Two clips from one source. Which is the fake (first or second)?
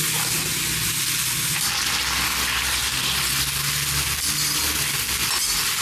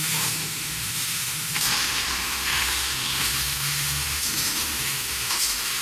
second